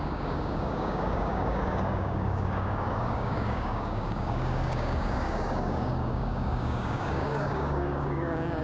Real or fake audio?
fake